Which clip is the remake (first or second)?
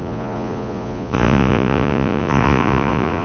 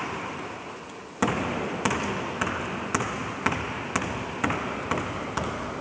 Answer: first